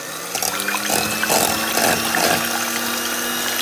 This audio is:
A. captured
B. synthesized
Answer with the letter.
A